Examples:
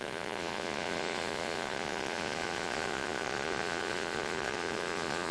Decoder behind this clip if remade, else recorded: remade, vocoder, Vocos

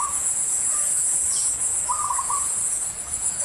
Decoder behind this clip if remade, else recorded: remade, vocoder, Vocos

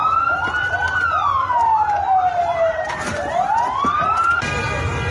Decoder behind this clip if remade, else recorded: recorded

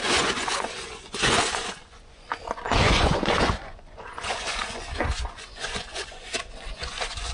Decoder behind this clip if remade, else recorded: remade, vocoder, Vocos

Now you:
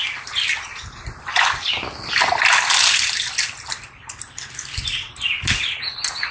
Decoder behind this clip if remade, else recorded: recorded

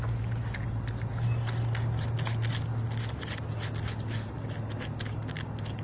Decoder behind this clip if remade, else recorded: recorded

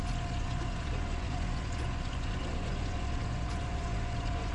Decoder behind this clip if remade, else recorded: remade, vocoder, Vocos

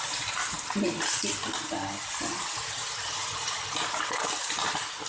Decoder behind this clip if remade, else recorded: recorded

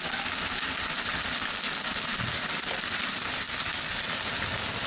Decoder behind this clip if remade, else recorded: recorded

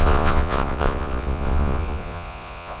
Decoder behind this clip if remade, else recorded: remade, vocoder, Vocos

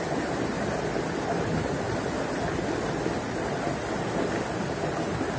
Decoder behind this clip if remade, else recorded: recorded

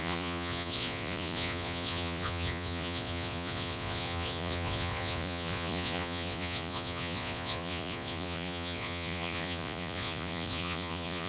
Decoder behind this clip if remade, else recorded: remade, vocoder, Vocos